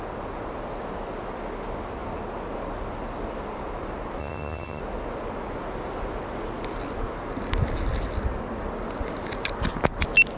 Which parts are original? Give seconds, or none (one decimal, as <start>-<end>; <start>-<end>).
0.0-4.2; 4.8-10.4